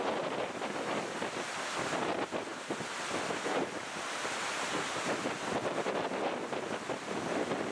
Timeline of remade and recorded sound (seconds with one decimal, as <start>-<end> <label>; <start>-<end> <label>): 0.0-7.7 recorded